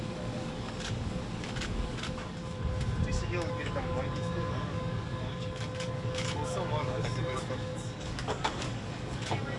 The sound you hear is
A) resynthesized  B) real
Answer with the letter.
A